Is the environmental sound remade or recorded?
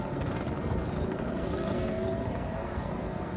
remade